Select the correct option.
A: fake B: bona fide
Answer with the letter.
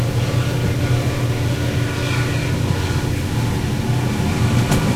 B